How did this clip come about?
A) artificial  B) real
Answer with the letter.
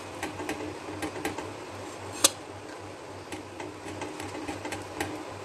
B